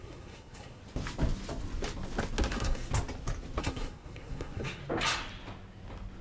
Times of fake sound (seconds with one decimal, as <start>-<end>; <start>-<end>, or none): 0.0-0.8; 2.5-2.9; 3.6-4.8